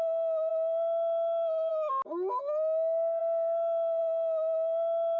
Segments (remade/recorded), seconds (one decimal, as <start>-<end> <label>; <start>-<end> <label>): 0.0-5.2 recorded